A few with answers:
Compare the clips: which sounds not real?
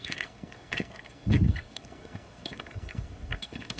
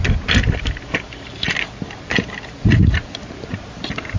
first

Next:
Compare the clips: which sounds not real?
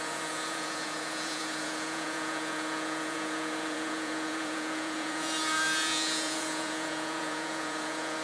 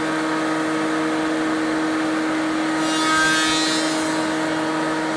first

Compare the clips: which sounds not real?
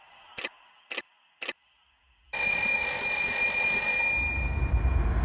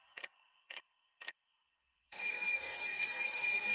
second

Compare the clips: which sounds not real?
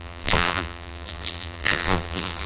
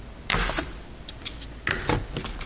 first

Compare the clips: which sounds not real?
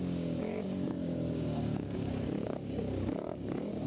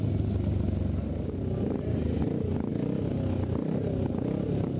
first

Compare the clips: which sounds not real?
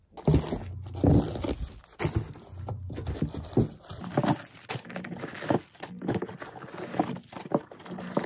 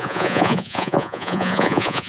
second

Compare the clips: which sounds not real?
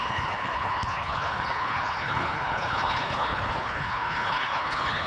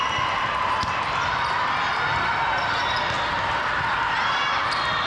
first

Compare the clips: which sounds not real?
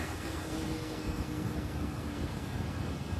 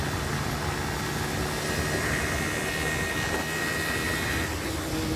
first